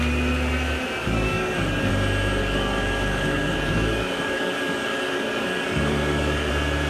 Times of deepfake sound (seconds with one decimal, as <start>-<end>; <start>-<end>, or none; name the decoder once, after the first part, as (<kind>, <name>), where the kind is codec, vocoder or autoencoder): 1.0-1.9 (codec, DAC); 2.4-6.5